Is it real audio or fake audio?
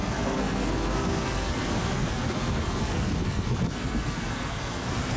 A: fake